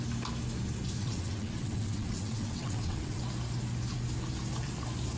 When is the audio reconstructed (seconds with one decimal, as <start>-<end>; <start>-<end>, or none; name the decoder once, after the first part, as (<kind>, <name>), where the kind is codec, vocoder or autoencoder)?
1.0-3.2 (vocoder, WaveNeXt)